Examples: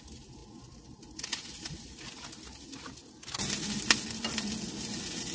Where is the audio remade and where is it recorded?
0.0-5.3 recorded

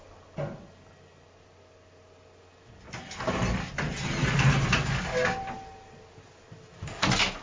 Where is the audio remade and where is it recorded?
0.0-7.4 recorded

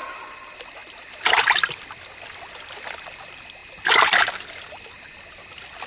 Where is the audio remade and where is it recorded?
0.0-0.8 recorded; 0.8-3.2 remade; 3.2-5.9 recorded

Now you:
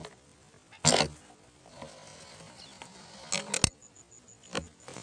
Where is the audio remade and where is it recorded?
0.0-5.0 recorded

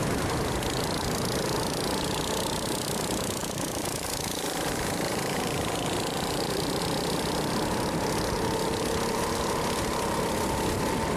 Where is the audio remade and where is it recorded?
0.0-3.4 recorded; 3.4-6.8 remade; 6.8-11.2 recorded

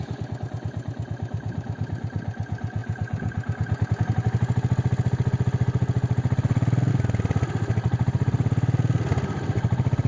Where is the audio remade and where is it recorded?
0.0-10.1 recorded